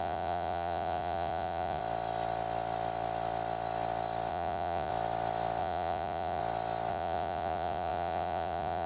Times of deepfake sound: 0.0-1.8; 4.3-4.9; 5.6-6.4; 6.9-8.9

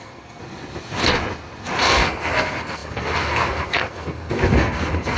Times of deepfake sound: 0.0-0.4; 1.8-5.2

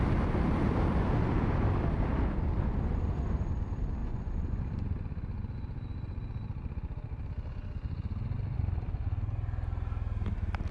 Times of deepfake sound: 4.0-4.6

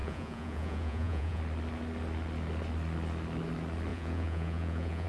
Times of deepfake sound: 0.0-1.4; 3.9-5.1

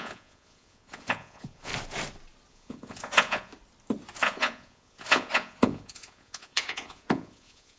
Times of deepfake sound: 0.0-1.7; 2.5-3.5; 4.2-7.8

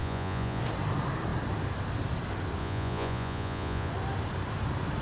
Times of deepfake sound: 0.0-0.6; 2.6-3.9

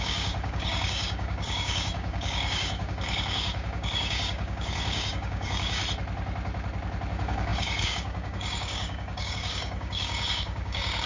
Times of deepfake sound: 0.0-5.8; 7.1-11.1

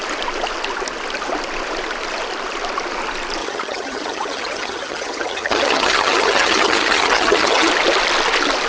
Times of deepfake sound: 3.4-7.7